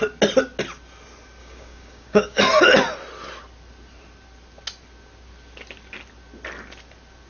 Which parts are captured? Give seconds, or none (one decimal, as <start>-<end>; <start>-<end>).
0.0-1.4; 2.4-7.3